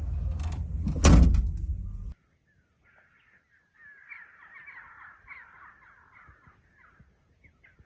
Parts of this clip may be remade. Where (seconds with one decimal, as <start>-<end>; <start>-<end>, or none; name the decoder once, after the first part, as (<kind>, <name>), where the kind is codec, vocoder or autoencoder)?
none